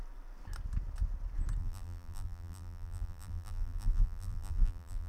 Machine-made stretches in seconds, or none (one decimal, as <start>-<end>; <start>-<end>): 1.6-5.1